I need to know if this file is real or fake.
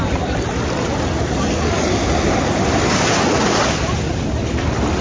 real